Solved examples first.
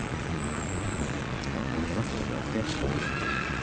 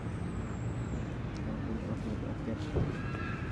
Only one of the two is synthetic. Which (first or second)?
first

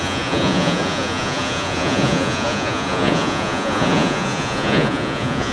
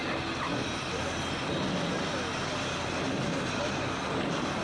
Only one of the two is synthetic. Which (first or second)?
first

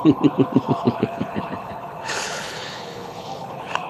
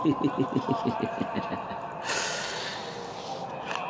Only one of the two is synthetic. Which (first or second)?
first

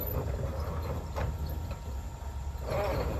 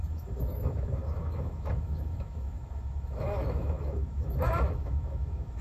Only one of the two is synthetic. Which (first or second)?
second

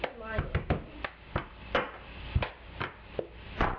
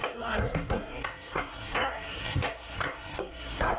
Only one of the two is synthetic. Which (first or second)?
second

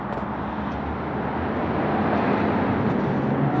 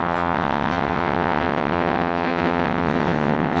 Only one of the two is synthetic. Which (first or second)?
second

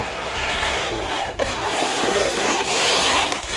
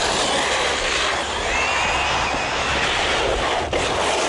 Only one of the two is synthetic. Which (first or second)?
first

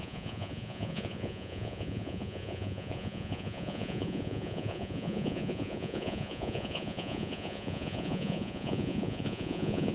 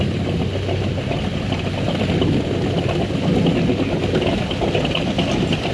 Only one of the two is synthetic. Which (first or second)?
first